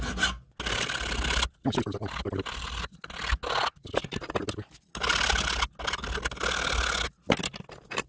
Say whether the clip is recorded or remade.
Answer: recorded